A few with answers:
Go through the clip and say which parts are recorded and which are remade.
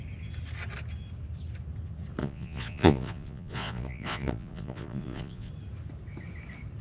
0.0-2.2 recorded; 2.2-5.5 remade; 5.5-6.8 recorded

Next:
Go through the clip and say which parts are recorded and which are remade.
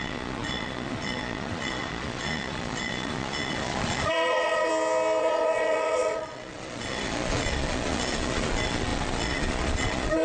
0.0-4.7 remade; 4.7-5.2 recorded; 5.2-10.2 remade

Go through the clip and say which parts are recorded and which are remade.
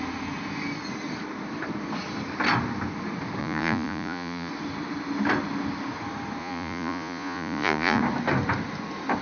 0.0-3.4 recorded; 3.4-4.5 remade; 4.5-6.4 recorded; 6.4-8.0 remade; 8.0-9.2 recorded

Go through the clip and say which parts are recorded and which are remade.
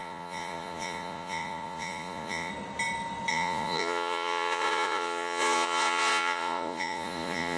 0.0-2.5 remade; 2.5-3.3 recorded; 3.3-7.6 remade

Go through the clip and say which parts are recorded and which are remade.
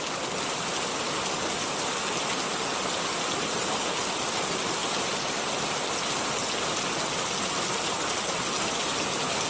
0.0-9.5 recorded